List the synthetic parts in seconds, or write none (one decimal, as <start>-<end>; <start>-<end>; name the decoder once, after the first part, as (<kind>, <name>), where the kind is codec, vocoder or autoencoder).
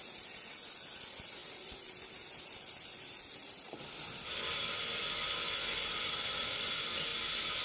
none